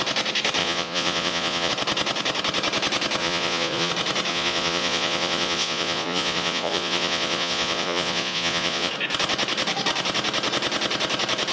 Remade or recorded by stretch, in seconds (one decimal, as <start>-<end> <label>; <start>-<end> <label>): 0.0-0.6 recorded; 0.6-1.7 remade; 1.7-3.2 recorded; 3.2-3.9 remade; 3.9-4.3 recorded; 4.3-8.9 remade; 8.9-11.5 recorded